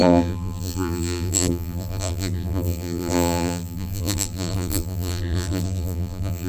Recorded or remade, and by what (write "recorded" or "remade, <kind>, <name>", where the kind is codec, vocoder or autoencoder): remade, vocoder, BigVGAN v2